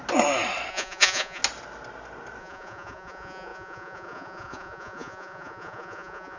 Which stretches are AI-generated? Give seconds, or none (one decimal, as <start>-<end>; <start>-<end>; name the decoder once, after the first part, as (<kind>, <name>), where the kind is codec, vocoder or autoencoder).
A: 0.7-1.4 (vocoder, Vocos); 2.4-6.4